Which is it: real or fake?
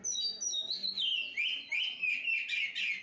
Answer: real